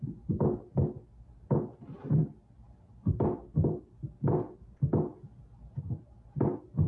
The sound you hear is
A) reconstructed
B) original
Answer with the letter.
B